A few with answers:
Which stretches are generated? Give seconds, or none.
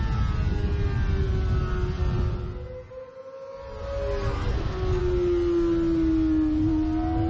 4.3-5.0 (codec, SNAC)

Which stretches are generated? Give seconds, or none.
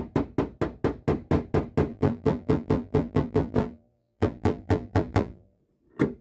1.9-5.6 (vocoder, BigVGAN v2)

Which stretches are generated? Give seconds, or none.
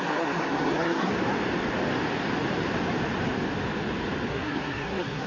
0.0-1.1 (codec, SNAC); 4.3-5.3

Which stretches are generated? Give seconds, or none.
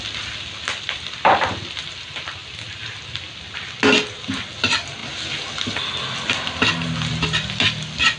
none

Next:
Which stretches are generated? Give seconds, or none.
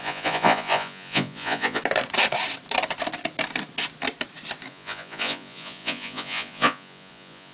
0.0-1.8 (vocoder, Vocos); 4.7-7.5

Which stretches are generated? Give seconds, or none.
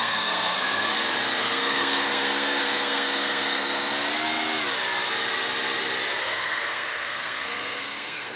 0.0-0.9 (codec, SNAC); 1.4-3.9; 6.2-8.4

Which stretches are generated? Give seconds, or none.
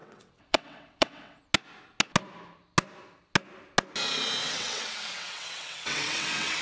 0.0-1.4 (vocoder, WaveNeXt); 4.4-6.6